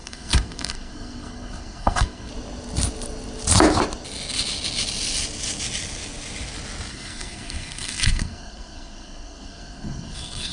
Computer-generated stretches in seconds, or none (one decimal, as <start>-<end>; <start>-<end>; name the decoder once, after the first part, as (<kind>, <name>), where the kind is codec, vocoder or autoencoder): 0.0-2.3 (codec, SNAC); 6.9-10.5